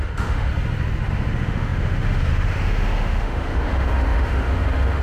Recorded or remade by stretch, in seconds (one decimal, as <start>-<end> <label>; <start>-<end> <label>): 0.0-0.5 remade; 0.5-1.1 recorded; 1.1-5.0 remade